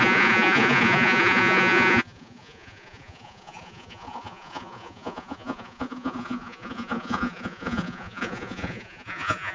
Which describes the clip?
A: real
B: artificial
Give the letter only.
B